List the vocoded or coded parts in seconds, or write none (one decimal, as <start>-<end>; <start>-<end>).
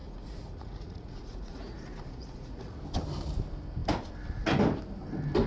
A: 0.0-2.8